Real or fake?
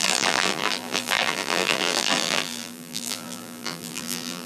fake